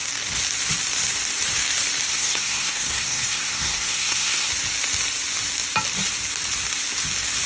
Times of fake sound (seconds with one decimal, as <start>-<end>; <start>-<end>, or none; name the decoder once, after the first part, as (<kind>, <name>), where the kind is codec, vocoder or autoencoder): 2.1-4.5 (codec, SNAC)